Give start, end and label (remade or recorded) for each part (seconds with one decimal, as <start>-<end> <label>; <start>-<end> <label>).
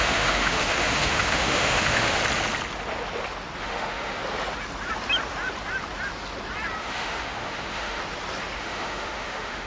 0.0-2.2 remade; 2.2-3.6 recorded; 3.6-4.2 remade; 4.2-6.8 recorded; 6.8-8.0 remade; 8.0-8.6 recorded; 8.6-9.7 remade